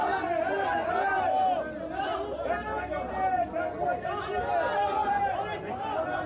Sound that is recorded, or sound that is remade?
recorded